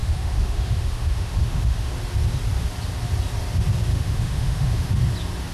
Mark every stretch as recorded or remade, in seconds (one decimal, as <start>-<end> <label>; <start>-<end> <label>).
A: 0.0-1.9 remade; 1.9-3.9 recorded; 3.9-4.9 remade; 4.9-5.5 recorded